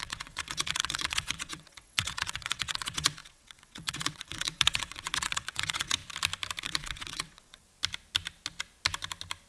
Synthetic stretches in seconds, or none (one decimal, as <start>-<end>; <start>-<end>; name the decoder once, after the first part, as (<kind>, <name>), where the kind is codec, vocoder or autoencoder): 0.0-6.0 (vocoder, WaveNeXt); 6.6-7.6